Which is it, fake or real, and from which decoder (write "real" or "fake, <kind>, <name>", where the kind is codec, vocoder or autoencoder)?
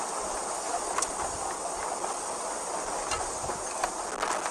real